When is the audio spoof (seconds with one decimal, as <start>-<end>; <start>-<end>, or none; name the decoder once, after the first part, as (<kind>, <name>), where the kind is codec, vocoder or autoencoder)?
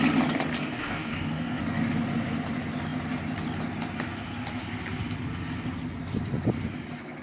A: 0.6-1.6 (codec, DAC)